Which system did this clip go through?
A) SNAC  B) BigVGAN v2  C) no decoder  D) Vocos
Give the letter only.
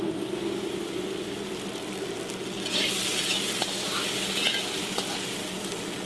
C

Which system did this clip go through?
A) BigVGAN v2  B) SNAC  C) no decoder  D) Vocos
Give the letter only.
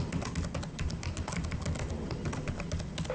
C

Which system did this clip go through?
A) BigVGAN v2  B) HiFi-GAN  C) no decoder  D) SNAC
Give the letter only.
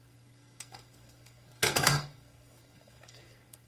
D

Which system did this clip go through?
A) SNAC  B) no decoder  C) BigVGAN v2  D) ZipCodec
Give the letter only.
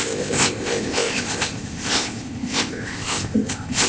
D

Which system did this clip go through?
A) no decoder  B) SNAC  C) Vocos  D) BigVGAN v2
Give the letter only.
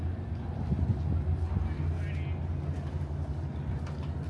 A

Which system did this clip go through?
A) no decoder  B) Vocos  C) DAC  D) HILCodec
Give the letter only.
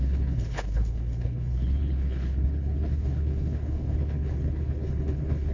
D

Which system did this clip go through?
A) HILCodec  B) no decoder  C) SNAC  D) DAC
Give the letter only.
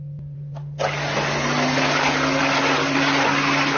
B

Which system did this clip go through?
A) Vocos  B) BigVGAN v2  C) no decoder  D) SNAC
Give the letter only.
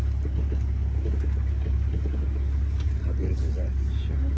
C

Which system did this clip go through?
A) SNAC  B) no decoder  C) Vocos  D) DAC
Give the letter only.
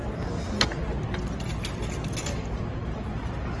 B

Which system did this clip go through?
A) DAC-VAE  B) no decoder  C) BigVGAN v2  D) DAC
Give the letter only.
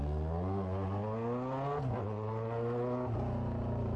B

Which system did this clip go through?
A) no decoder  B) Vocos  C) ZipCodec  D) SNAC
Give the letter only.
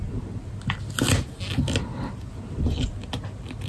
A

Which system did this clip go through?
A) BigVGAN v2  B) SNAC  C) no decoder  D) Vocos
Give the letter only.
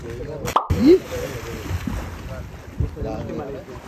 C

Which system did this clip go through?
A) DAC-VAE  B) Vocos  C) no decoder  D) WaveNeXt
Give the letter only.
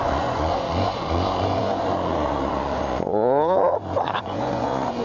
B